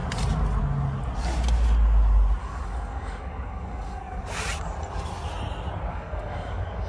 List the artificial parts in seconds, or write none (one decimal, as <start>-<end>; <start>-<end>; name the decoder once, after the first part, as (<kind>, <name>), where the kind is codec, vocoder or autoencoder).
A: 2.4-4.2 (codec, DAC); 5.9-6.9